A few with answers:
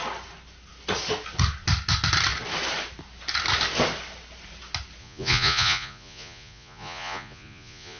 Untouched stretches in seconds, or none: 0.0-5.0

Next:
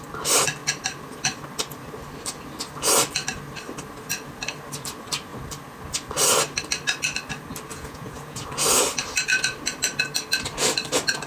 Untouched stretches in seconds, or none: 0.0-7.7; 8.4-11.3

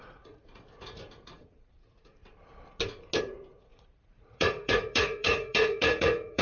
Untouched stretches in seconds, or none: 2.2-3.2

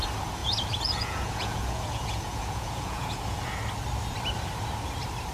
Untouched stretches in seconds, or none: 0.0-0.4; 3.5-5.3

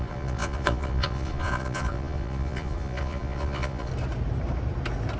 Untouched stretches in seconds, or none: 3.9-5.2

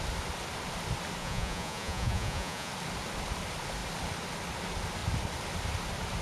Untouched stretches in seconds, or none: 0.0-1.2; 2.7-6.2

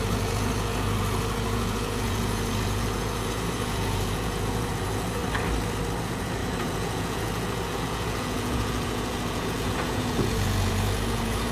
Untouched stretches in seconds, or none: 5.2-6.0

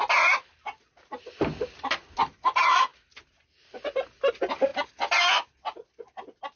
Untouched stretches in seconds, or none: 0.0-6.6